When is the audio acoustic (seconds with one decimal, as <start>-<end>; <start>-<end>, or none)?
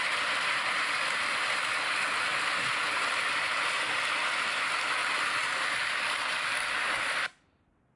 0.0-8.0